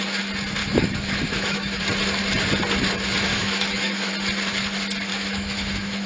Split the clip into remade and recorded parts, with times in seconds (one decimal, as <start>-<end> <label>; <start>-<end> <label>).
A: 0.0-0.6 recorded; 0.6-1.8 remade; 1.8-3.3 recorded; 3.3-4.1 remade; 4.1-5.1 recorded; 5.1-6.1 remade